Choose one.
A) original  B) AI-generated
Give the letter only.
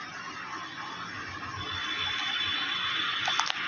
A